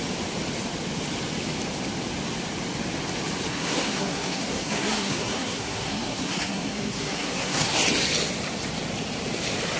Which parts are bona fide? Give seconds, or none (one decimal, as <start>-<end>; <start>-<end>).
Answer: 0.0-3.5; 7.7-9.8

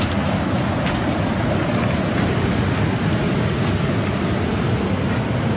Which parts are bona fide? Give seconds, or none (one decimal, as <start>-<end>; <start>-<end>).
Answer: 0.0-5.6

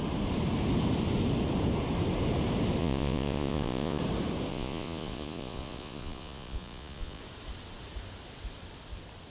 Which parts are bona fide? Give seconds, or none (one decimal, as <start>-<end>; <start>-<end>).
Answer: 0.0-2.8; 4.0-4.5; 7.2-9.3

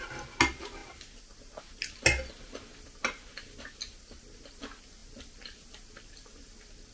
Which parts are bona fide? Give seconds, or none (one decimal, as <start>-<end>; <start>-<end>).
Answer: 0.0-6.9

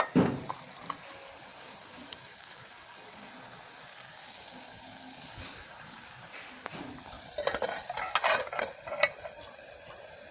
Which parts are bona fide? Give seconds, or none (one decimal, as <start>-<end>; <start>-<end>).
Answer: 0.0-1.5; 6.3-10.3

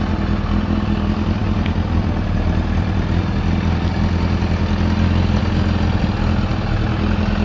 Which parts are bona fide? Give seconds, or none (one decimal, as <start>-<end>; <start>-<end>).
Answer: 0.0-7.4

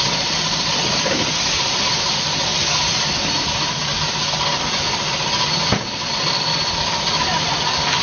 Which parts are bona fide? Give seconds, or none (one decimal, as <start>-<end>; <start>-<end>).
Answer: 2.5-4.3

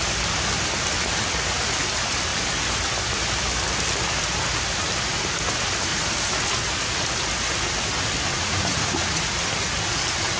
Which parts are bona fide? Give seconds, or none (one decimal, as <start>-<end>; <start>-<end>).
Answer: 0.0-8.3; 9.3-10.4